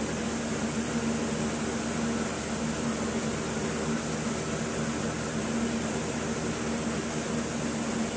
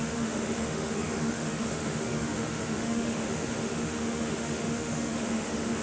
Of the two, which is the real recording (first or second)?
first